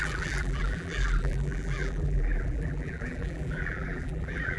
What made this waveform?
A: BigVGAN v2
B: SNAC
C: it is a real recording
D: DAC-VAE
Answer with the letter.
A